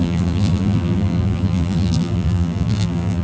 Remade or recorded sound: remade